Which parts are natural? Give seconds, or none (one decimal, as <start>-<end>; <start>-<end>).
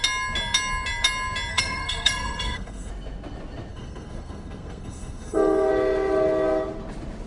0.0-1.5; 2.9-3.7; 5.7-7.3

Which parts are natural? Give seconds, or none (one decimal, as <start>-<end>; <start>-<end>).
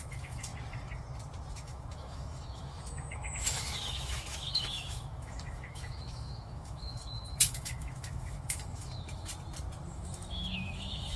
0.5-1.5; 9.3-9.9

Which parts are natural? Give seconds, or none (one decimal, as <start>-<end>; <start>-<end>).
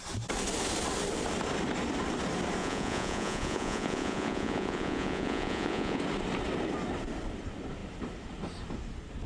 0.0-2.6; 6.0-9.3